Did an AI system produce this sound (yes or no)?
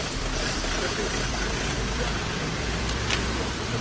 yes